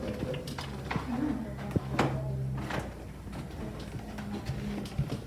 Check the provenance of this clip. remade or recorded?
recorded